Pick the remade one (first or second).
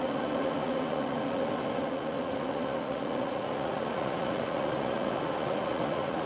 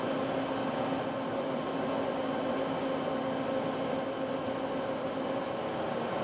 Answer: first